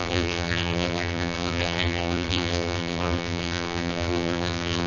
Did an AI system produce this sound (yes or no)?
yes